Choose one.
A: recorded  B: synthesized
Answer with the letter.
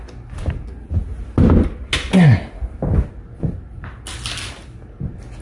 A